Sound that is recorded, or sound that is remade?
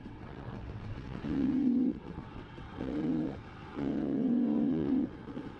remade